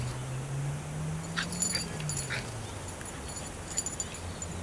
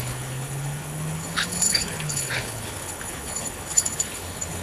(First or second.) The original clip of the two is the first